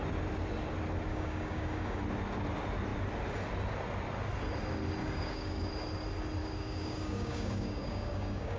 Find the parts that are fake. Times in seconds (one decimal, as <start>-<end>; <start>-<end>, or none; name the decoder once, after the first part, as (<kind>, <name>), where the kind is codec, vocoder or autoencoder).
1.1-2.0 (codec, DAC); 5.0-5.7; 6.4-8.6